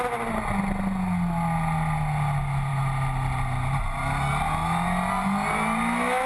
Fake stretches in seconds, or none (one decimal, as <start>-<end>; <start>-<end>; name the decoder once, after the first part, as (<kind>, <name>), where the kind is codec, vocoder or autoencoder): none